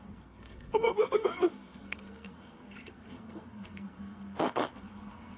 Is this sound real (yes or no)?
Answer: no